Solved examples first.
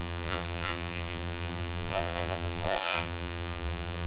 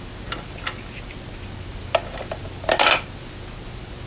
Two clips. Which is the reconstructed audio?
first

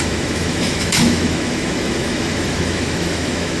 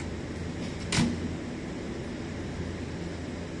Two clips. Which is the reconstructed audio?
first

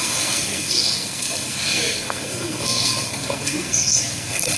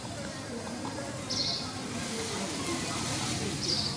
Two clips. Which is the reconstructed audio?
first